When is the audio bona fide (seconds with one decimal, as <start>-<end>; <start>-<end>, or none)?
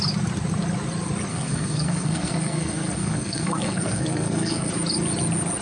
0.0-1.3; 4.7-5.6